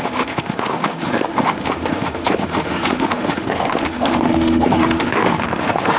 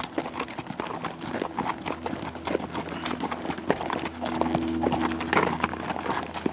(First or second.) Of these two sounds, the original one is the second